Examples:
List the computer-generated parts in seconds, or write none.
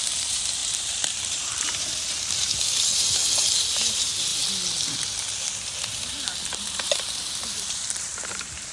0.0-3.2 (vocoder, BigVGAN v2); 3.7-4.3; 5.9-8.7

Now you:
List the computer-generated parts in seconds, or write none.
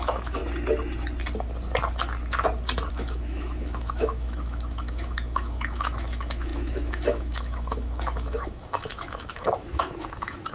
0.0-0.4 (autoencoder, DAC-VAE); 2.9-10.5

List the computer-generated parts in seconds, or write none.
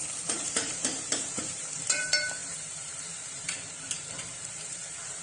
0.0-5.2 (vocoder, BigVGAN v2)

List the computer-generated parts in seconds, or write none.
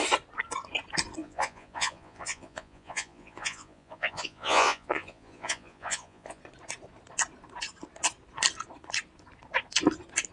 1.2-6.4 (vocoder, Vocos)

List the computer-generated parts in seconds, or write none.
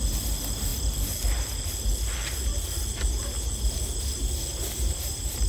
4.5-5.5 (vocoder, BigVGAN v2)